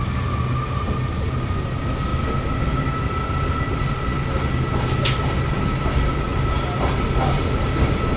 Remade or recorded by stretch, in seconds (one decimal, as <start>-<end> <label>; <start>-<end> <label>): 0.0-8.2 recorded